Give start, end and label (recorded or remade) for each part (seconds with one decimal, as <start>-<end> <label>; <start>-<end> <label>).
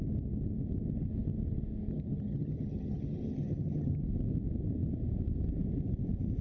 0.0-1.9 recorded; 1.9-4.0 remade; 4.0-6.4 recorded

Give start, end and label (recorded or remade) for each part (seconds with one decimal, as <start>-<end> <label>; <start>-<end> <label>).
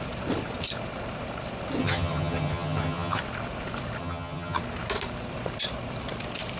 0.0-1.8 recorded; 1.8-3.2 remade; 3.2-4.0 recorded; 4.0-4.6 remade; 4.6-6.6 recorded